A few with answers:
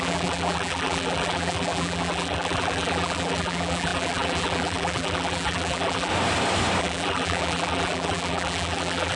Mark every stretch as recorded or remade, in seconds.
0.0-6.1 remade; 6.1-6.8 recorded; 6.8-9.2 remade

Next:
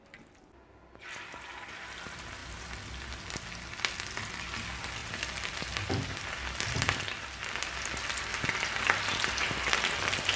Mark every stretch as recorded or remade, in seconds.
0.0-2.4 recorded; 2.4-2.9 remade; 2.9-5.0 recorded; 5.0-9.2 remade; 9.2-10.4 recorded

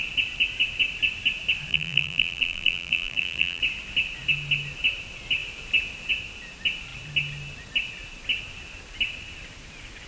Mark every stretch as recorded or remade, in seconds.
0.0-1.7 recorded; 1.7-3.6 remade; 3.6-10.1 recorded

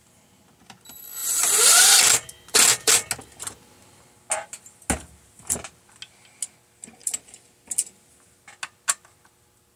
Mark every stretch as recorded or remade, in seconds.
0.0-1.2 recorded; 1.2-2.9 remade; 2.9-7.0 recorded; 7.0-7.8 remade; 7.8-9.8 recorded